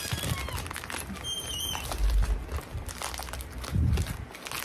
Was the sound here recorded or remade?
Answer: recorded